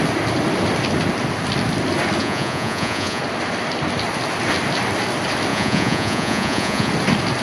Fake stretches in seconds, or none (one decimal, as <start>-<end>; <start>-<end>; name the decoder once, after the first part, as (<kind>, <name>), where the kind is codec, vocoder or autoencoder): 2.2-3.2 (vocoder, Vocos); 5.5-6.9